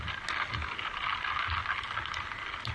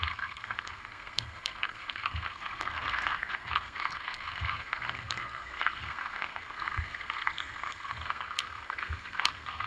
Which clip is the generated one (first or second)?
second